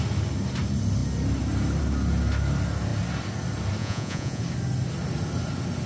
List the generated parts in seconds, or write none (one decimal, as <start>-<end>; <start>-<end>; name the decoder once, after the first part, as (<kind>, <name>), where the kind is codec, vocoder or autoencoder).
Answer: 3.8-4.4 (vocoder, Vocos)